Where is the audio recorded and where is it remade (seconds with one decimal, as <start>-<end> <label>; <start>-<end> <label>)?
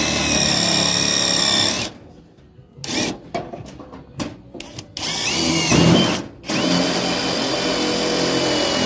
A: 0.0-8.9 recorded